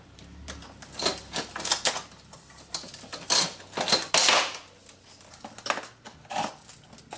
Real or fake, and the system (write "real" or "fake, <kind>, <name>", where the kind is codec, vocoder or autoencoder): real